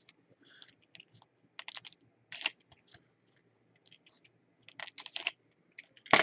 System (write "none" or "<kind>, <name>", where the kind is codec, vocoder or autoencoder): none